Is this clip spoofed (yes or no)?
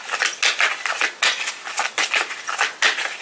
no